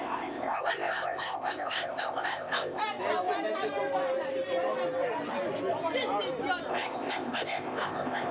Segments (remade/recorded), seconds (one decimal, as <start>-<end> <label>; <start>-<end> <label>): 0.0-2.8 remade; 2.8-6.7 recorded; 6.7-8.3 remade